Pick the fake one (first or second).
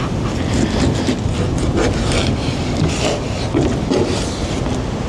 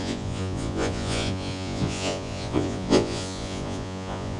second